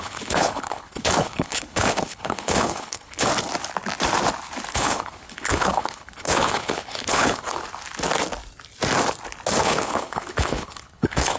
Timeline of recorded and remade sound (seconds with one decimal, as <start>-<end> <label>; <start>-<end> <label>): 0.0-3.3 remade; 3.3-4.7 recorded; 4.7-7.6 remade; 7.6-9.6 recorded; 9.6-11.4 remade